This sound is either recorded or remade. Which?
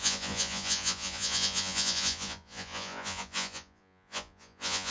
remade